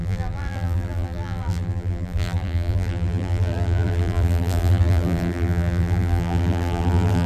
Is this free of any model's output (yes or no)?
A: no